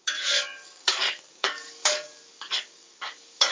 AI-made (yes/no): yes